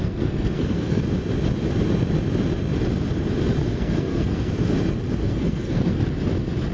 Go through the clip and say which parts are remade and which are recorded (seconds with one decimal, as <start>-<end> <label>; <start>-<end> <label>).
0.0-1.0 remade; 1.0-3.7 recorded; 3.7-4.5 remade; 4.5-5.2 recorded; 5.2-6.0 remade; 6.0-6.7 recorded